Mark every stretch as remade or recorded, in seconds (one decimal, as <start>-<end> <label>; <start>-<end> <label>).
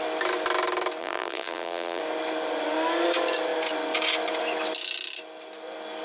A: 0.0-1.0 recorded; 1.0-2.0 remade; 2.0-6.0 recorded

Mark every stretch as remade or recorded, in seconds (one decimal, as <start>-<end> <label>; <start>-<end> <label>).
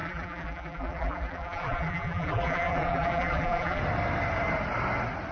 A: 0.0-3.8 remade; 3.8-5.3 recorded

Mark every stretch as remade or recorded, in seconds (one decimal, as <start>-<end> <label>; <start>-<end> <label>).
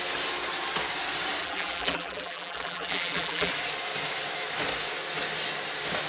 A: 0.0-1.4 recorded; 1.4-3.5 remade; 3.5-6.1 recorded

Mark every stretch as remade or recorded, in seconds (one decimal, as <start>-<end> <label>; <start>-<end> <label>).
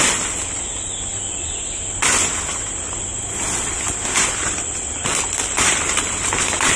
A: 0.0-4.4 recorded; 4.4-6.8 remade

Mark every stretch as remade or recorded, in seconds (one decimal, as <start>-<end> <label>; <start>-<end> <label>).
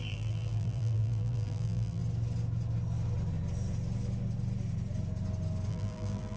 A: 0.0-2.0 remade; 2.0-5.7 recorded; 5.7-6.4 remade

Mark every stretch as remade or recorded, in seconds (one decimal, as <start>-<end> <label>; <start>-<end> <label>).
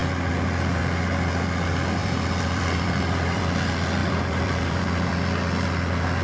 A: 0.0-2.0 recorded; 2.0-3.4 remade; 3.4-4.0 recorded; 4.0-5.1 remade; 5.1-6.2 recorded